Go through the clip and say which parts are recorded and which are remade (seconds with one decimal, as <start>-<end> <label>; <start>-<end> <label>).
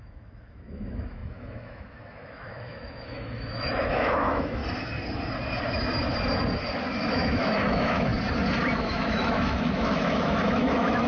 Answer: 0.0-4.6 remade; 4.6-7.1 recorded; 7.1-8.1 remade; 8.1-8.8 recorded; 8.8-11.1 remade